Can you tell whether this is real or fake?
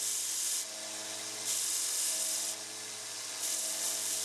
real